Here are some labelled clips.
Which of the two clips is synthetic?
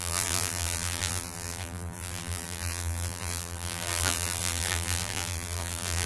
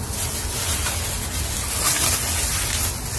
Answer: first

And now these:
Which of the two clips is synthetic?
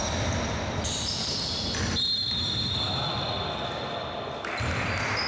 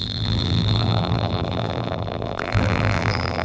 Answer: second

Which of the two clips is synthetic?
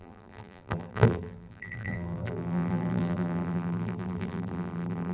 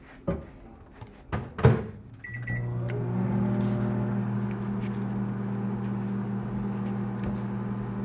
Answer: first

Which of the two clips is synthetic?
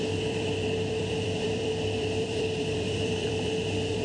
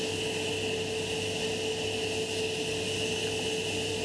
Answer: first